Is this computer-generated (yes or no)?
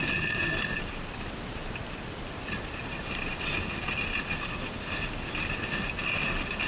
no